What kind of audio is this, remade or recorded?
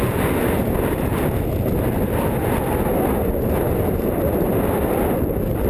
recorded